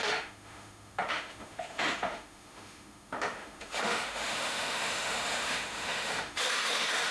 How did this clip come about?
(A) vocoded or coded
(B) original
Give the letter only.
A